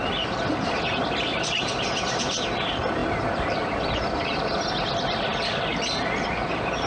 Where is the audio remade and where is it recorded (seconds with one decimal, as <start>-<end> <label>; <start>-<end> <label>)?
0.0-6.9 recorded